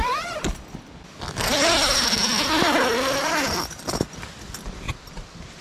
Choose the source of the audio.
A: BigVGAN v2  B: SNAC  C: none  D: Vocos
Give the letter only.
C